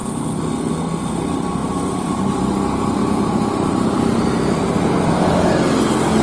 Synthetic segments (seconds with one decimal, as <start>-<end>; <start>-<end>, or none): 1.6-2.4; 3.0-4.0